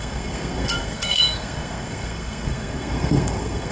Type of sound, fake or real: fake